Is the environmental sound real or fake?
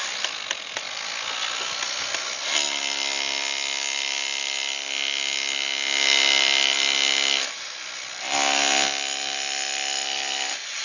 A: real